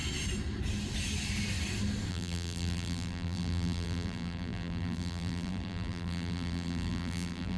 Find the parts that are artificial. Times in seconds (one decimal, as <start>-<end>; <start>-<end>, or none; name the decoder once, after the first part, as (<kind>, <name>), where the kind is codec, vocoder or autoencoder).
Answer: 2.1-7.6 (vocoder, BigVGAN v2)